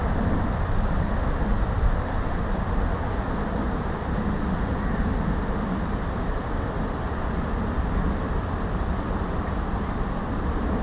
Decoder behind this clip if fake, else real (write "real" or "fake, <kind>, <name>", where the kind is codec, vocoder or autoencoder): real